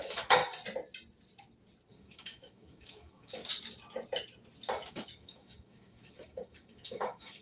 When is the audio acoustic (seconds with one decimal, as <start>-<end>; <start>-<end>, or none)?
0.4-1.9; 3.4-4.9